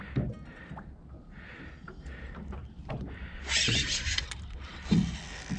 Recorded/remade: recorded